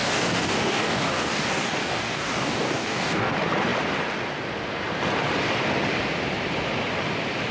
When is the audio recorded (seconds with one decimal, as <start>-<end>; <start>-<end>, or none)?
3.3-7.5